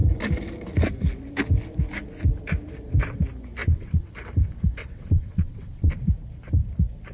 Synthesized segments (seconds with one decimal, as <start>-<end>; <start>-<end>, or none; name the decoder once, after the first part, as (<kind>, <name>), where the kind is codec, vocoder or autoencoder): 3.6-4.1 (vocoder, WaveNeXt); 4.8-5.9